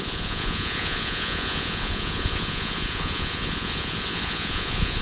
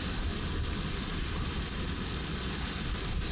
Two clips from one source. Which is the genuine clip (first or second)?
second